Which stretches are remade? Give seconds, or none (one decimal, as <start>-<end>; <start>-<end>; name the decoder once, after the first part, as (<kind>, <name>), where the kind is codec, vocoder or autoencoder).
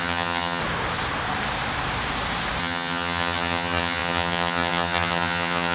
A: 0.0-0.6 (vocoder, HiFi-GAN); 2.6-5.7